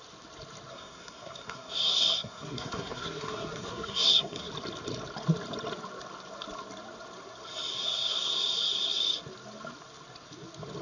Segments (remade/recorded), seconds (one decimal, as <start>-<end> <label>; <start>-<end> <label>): 0.0-0.7 recorded; 0.7-4.5 remade; 4.5-7.7 recorded; 7.7-9.0 remade; 9.0-10.8 recorded

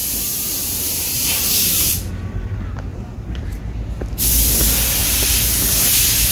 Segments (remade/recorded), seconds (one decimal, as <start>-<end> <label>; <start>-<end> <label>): 0.0-2.1 remade; 2.1-2.9 recorded; 2.9-3.6 remade; 3.6-6.3 recorded